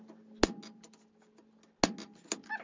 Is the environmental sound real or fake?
real